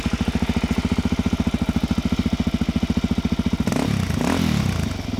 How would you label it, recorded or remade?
recorded